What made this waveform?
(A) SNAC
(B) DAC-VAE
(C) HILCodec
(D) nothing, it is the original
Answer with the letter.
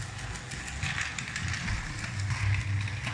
D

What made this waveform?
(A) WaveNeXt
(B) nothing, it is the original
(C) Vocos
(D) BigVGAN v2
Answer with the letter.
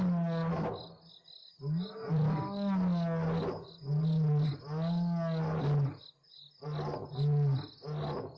B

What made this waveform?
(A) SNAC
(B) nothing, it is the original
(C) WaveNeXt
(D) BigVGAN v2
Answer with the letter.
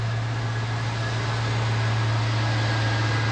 B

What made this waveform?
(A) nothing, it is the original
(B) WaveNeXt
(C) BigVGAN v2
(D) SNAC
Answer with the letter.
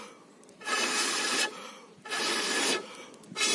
A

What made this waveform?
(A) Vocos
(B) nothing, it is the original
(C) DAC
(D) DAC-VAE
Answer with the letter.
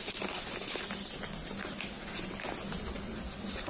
B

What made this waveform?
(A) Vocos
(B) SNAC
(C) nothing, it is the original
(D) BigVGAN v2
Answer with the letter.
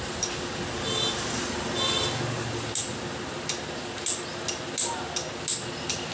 C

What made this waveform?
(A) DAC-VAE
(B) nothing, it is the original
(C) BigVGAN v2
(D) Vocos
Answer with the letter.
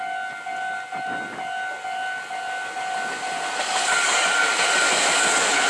B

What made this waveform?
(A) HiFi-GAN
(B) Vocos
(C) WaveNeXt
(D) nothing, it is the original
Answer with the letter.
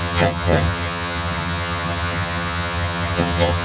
A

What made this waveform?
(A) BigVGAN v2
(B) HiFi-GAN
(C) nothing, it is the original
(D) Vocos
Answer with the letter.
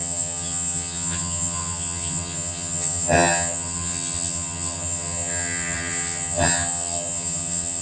B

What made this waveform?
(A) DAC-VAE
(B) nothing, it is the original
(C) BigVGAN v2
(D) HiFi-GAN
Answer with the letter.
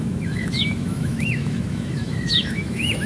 A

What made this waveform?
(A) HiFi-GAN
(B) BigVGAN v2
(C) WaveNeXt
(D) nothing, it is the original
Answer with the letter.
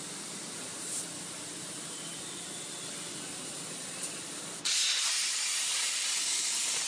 D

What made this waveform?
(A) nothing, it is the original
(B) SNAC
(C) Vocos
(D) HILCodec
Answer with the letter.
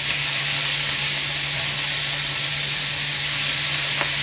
A